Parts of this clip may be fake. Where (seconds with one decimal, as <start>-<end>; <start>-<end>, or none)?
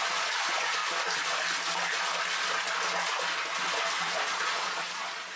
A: 0.0-0.8; 4.0-5.4